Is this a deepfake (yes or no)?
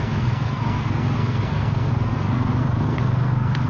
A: yes